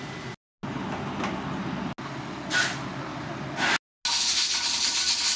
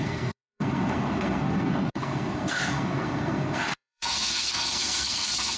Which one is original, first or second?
first